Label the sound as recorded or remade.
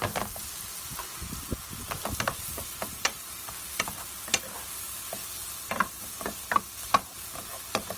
recorded